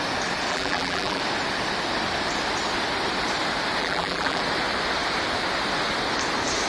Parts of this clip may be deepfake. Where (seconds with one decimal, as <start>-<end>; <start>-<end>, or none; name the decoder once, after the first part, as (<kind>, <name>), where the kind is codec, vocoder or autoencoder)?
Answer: 0.5-1.2 (vocoder, BigVGAN v2); 3.8-4.4